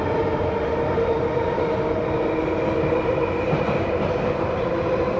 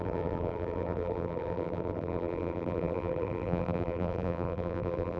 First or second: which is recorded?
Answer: first